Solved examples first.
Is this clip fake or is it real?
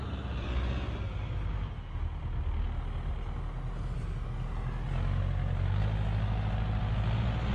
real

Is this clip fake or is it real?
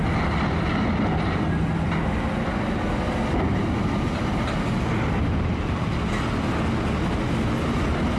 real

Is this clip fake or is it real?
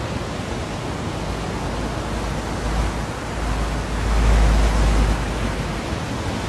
real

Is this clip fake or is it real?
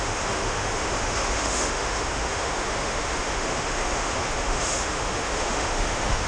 fake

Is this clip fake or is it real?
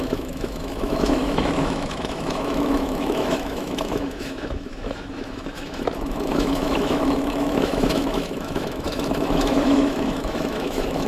fake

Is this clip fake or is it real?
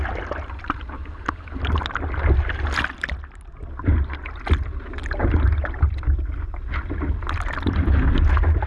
real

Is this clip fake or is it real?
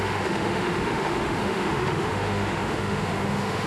fake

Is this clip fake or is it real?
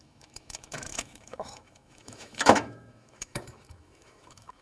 fake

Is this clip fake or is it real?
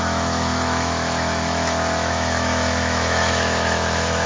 fake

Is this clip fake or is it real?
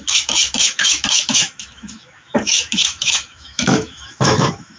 fake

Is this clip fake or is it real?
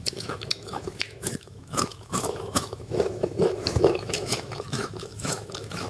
fake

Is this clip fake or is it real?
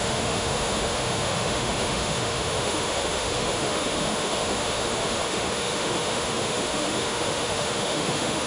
fake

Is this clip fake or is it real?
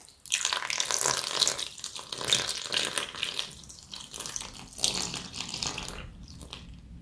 real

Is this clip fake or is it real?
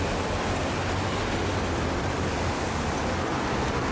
real